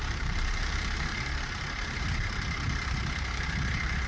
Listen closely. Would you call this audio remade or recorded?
remade